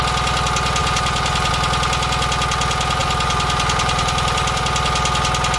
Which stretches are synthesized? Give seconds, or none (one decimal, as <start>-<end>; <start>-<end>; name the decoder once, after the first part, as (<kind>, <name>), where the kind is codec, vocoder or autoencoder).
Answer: 0.8-1.5 (vocoder, BigVGAN v2); 3.0-4.6

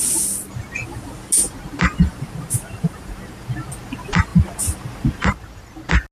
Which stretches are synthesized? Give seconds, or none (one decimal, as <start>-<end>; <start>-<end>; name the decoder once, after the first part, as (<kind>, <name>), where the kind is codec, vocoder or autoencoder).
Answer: 2.1-3.7 (vocoder, BigVGAN v2); 4.3-5.5

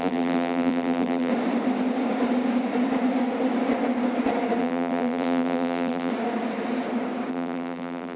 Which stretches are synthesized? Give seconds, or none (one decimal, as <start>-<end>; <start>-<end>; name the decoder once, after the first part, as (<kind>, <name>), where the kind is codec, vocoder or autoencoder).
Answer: 0.0-1.3 (vocoder, BigVGAN v2); 4.6-6.1; 7.3-8.2

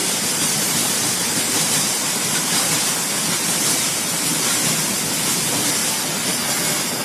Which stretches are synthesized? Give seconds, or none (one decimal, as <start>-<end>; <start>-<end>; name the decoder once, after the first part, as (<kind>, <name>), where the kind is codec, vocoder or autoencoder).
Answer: 0.0-2.9 (vocoder, BigVGAN v2)

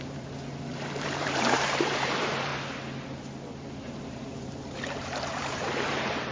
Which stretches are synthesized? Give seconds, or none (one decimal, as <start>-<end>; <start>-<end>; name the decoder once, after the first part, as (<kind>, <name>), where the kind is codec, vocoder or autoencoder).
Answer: 0.0-2.5 (vocoder, BigVGAN v2); 3.8-6.3